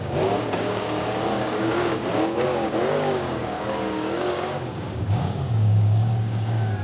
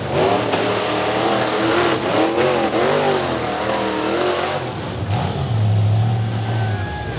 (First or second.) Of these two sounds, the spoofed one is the first